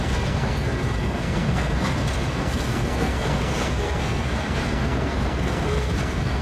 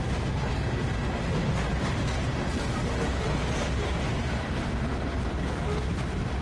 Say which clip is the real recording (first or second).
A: second